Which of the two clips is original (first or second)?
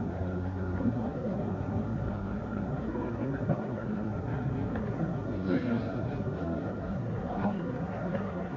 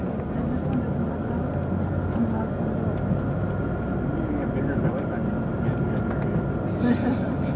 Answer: second